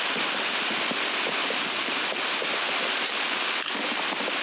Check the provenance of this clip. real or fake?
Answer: real